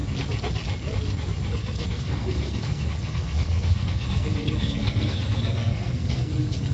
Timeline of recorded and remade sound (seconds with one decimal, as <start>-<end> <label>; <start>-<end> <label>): 0.0-1.5 recorded; 1.5-6.7 remade